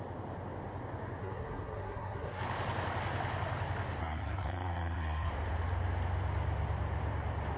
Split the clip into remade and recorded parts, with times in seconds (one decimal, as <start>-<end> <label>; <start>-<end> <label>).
0.0-1.2 recorded; 1.2-2.4 remade; 2.4-4.0 recorded; 4.0-5.3 remade; 5.3-7.6 recorded